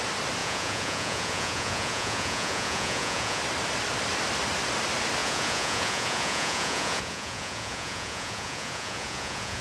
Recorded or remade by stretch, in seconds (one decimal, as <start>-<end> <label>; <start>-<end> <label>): 0.0-0.4 recorded; 0.4-3.4 remade; 3.4-5.2 recorded; 5.2-9.6 remade